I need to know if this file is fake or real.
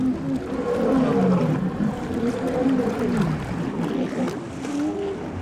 real